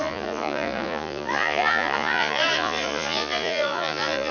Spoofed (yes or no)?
yes